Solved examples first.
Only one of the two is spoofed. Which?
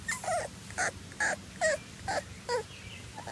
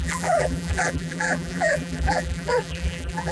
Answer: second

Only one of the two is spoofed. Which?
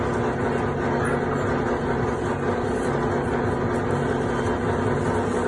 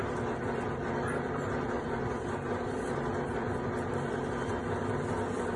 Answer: second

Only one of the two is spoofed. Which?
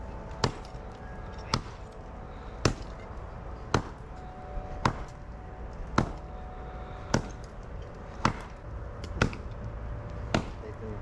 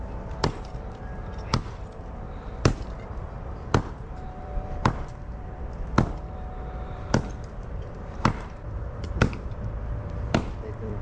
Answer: second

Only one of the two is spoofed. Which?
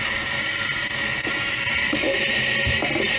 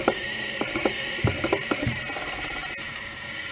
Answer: second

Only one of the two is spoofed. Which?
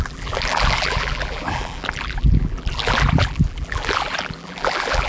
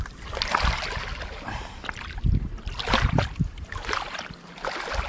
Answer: first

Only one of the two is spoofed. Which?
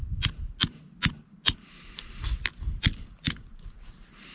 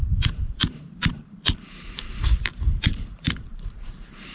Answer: second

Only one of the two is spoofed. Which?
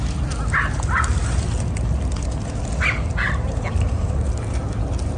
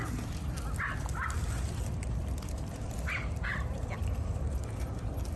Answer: second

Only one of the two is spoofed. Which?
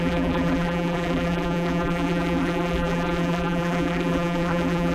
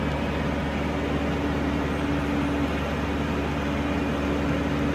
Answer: first